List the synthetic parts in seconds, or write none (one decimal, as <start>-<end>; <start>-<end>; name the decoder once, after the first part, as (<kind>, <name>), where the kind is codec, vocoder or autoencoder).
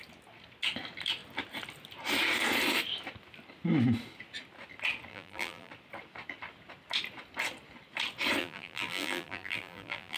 5.1-5.7 (vocoder, BigVGAN v2); 8.4-10.2